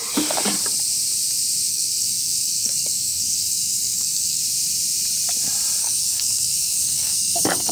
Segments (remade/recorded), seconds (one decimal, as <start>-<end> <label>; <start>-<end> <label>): 0.0-1.7 recorded; 1.7-4.4 remade; 4.4-5.8 recorded; 5.8-7.7 remade